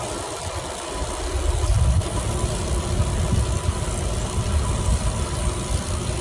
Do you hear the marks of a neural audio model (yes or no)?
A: no